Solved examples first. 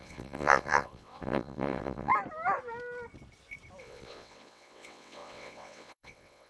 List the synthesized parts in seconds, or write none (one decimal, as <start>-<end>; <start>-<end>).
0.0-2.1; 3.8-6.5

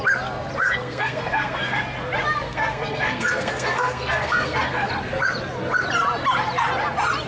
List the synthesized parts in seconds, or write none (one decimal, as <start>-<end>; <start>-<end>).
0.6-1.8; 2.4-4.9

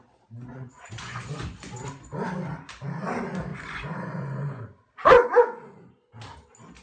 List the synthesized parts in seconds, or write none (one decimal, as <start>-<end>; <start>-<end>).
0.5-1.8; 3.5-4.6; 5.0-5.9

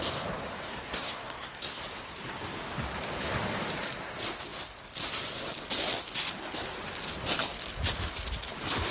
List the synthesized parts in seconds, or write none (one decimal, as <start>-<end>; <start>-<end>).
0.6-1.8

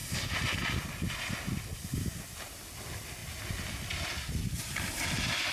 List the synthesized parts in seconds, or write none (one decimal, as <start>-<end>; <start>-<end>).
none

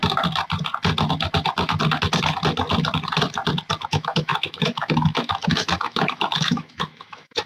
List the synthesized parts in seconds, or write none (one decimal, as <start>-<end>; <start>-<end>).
3.9-7.5

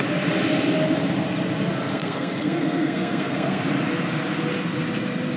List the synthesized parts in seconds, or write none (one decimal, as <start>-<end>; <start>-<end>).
1.9-3.6

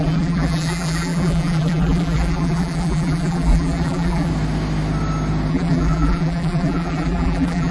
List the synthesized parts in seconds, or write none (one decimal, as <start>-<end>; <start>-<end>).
0.0-4.3; 5.5-7.7